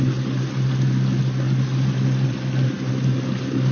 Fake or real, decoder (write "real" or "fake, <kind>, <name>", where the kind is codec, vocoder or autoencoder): real